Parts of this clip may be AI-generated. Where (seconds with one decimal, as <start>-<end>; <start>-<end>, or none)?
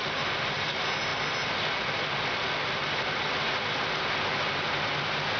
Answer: none